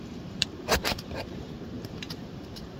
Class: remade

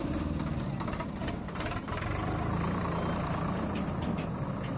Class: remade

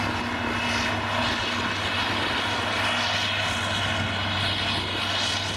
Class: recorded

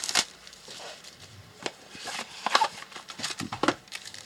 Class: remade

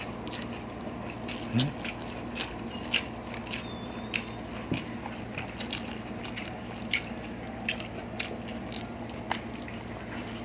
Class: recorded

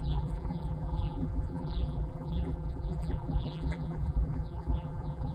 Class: remade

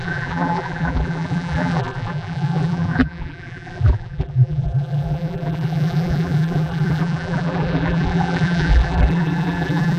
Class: remade